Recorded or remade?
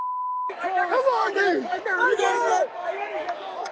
remade